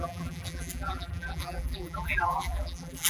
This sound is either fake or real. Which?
fake